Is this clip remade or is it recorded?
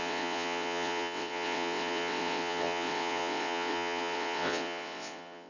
remade